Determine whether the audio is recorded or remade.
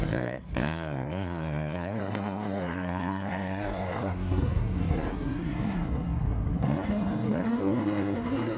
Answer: remade